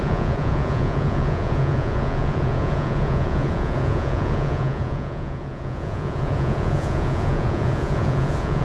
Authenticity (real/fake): fake